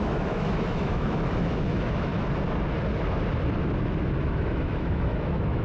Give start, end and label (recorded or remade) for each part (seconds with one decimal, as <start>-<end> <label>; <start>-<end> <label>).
0.0-2.1 remade; 2.1-4.2 recorded; 4.2-5.6 remade